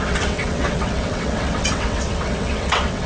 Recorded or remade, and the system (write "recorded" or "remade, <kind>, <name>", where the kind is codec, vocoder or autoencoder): remade, vocoder, WaveNeXt